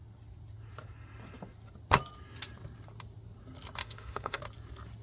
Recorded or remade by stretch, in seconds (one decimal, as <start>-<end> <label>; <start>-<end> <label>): 0.0-3.8 recorded; 3.8-4.4 remade; 4.4-5.0 recorded